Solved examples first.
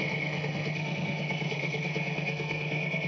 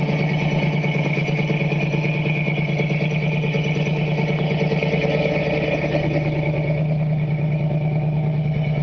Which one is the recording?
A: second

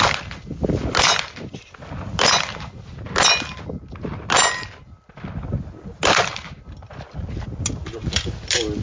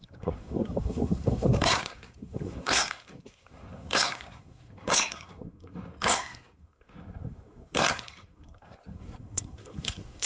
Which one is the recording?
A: first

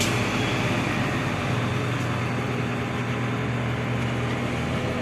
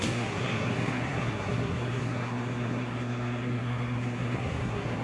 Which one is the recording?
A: first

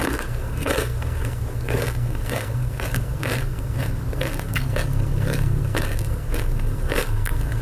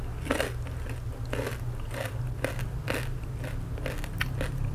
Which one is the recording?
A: second